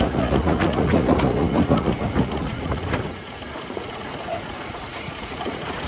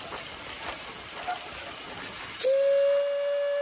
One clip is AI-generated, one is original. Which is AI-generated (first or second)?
first